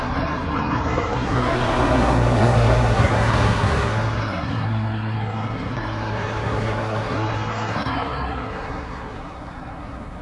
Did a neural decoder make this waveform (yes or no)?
yes